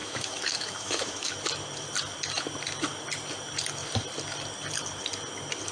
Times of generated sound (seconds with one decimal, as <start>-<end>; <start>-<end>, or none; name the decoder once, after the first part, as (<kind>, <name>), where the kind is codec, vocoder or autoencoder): 0.0-1.3 (autoencoder, DAC-VAE)